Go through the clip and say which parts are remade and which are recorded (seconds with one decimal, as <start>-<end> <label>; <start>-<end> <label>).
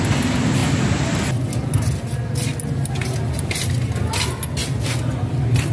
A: 0.0-5.7 recorded